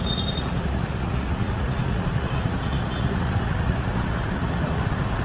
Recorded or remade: remade